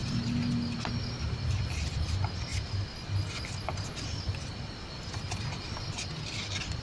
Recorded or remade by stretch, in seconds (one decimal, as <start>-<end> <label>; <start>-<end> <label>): 0.0-6.8 recorded